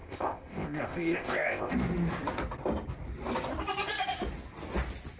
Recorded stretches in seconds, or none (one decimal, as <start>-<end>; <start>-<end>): 1.7-5.2